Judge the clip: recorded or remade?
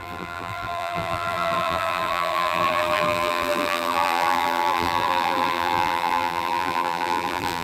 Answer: remade